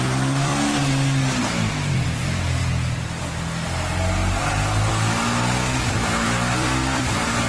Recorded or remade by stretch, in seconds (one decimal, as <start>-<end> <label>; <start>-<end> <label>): 0.0-0.5 remade; 0.5-1.4 recorded; 1.4-2.6 remade; 2.6-4.4 recorded; 4.4-4.9 remade; 4.9-5.9 recorded; 5.9-7.5 remade